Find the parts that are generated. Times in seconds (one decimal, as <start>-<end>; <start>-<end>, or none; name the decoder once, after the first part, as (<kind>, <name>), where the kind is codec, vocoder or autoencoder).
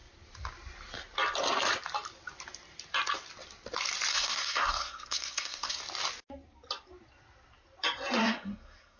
4.1-5.8 (codec, SNAC); 8.2-9.0